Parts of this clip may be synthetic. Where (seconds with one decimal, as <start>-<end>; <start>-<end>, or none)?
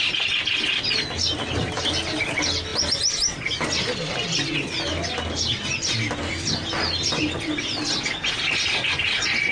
none